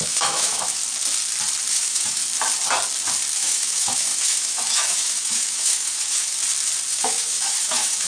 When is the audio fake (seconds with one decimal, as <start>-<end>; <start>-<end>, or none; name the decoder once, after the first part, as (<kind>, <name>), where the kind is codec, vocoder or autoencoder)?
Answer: 0.0-0.8 (autoencoder, DAC-VAE); 1.7-2.2; 3.4-6.3; 6.9-8.1